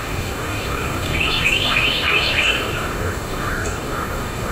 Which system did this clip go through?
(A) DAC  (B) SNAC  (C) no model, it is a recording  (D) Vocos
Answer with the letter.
A